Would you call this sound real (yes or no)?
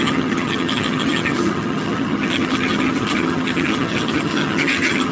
no